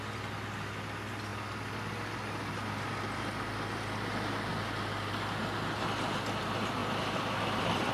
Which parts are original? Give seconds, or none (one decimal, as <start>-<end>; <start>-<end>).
0.0-1.3; 3.5-6.8